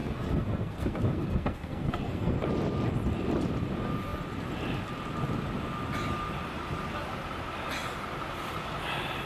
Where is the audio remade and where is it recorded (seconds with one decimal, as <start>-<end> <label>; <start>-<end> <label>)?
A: 0.0-2.4 remade; 2.4-9.3 recorded